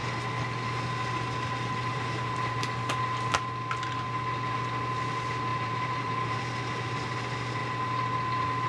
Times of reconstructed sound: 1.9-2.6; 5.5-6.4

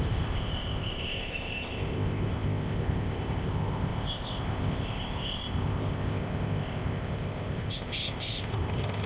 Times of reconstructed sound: 0.0-9.1